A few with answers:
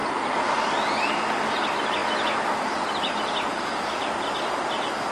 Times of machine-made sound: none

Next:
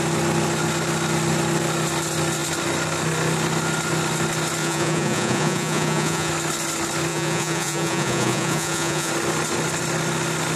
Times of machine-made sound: 4.6-6.3 (vocoder, Vocos); 7.1-9.1

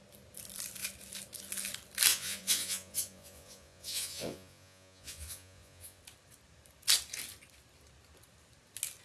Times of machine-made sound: 2.1-6.0 (vocoder, Vocos)

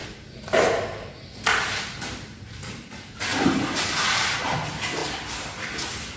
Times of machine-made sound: none

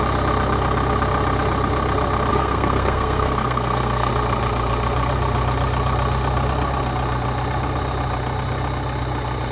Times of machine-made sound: 2.3-4.1 (codec, SNAC)

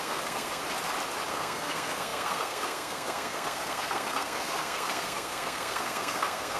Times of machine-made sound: 0.0-0.6 (codec, SNAC); 1.3-6.6